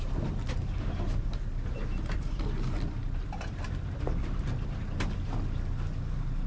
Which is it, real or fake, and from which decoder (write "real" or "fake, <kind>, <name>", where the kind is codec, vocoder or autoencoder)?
real